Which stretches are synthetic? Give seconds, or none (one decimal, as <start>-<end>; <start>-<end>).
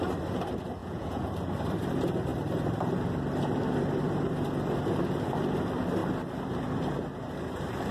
0.8-1.3